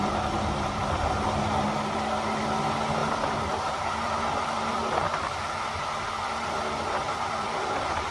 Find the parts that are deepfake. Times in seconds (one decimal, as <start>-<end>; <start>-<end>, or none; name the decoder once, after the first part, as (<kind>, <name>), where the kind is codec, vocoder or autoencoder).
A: 0.0-0.8 (vocoder, BigVGAN v2); 3.0-8.1